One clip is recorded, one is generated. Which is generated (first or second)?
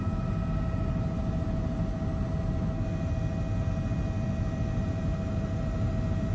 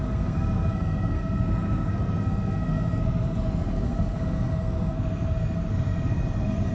second